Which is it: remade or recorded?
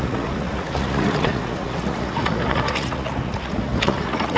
remade